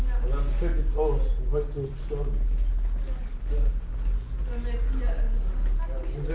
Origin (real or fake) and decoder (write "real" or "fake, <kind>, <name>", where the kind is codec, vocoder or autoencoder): real